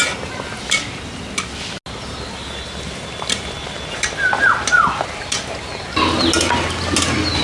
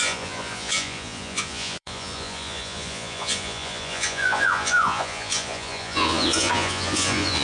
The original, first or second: first